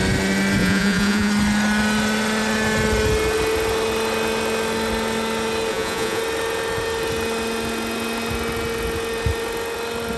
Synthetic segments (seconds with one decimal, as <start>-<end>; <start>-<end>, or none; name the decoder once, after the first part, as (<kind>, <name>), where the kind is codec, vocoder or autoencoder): 0.6-1.3 (vocoder, Vocos); 5.7-6.2